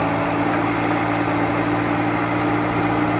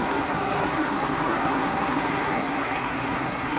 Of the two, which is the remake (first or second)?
second